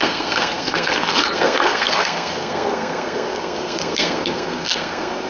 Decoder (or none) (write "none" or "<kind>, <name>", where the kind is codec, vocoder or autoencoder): codec, SNAC